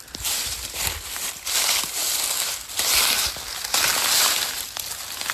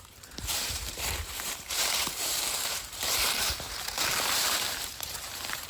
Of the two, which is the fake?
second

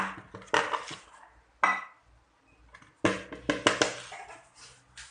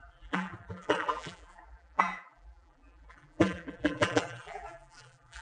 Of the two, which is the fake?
second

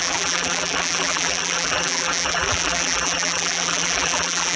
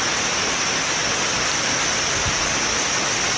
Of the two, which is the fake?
first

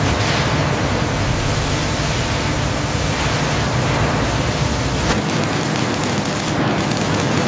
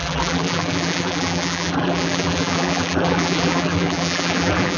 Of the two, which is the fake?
second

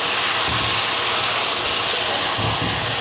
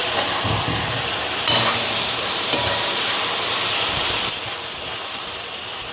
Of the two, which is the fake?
second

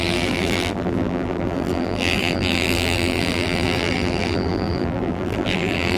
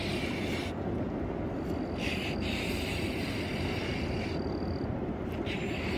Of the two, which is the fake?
first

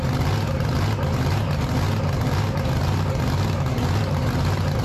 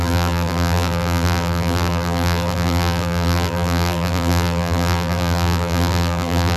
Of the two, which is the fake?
second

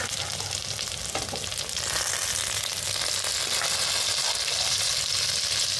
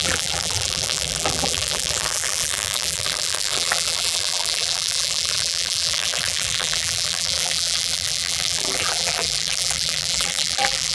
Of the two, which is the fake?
second